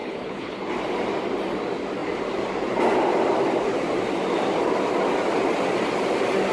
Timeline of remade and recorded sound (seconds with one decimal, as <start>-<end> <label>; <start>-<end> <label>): 0.0-0.6 remade; 0.6-6.5 recorded